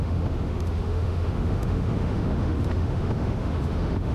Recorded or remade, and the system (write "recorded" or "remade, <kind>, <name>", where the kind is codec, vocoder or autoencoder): remade, autoencoder, DAC-VAE